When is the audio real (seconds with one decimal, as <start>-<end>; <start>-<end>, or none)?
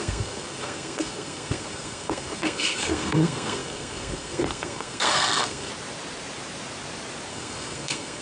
5.7-7.3